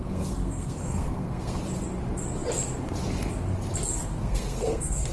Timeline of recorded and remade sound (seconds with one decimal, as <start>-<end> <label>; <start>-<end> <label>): 0.0-1.6 remade; 1.6-4.0 recorded; 4.0-5.1 remade